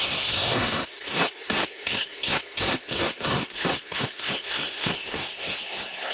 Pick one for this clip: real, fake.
fake